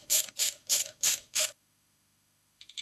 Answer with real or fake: fake